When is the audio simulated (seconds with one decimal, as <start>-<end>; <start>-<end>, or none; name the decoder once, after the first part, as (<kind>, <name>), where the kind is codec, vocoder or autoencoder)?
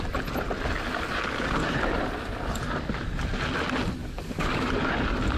4.0-4.7 (codec, DAC)